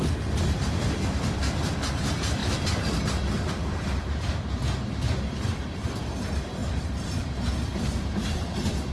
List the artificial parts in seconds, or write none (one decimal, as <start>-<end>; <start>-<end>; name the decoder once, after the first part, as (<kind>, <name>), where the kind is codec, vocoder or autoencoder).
0.0-2.4 (vocoder, BigVGAN v2); 3.5-4.6; 5.3-8.9